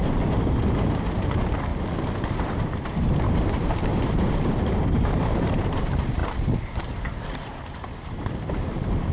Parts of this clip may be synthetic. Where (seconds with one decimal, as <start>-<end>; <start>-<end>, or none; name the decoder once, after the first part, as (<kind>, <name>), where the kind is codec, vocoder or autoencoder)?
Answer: 0.0-1.7 (vocoder, BigVGAN v2); 2.3-9.1